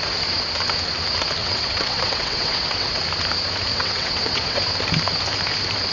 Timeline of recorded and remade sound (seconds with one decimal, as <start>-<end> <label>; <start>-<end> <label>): 0.0-1.4 recorded; 1.4-3.0 remade; 3.0-3.7 recorded; 3.7-4.6 remade; 4.6-5.9 recorded